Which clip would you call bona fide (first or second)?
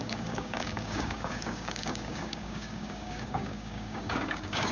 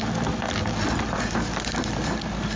second